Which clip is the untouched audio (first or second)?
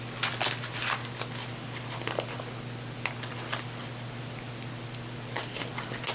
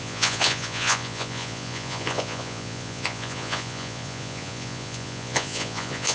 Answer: first